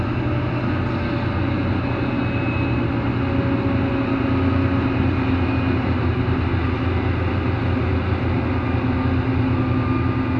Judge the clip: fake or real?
real